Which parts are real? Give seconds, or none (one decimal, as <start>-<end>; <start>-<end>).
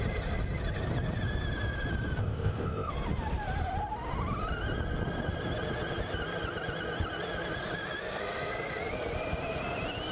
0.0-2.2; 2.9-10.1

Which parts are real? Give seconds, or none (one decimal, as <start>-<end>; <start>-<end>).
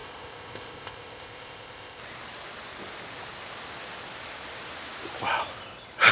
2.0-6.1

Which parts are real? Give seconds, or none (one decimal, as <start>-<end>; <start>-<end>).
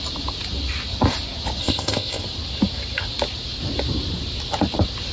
0.0-1.6; 2.2-5.1